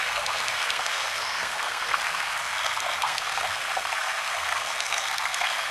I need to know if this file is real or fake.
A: fake